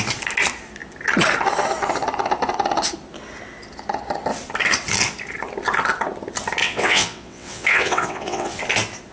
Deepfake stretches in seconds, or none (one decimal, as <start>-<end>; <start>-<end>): 6.6-8.6